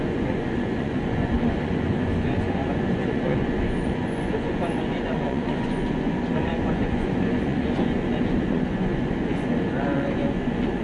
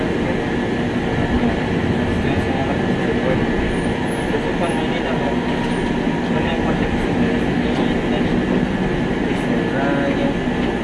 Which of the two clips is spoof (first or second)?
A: first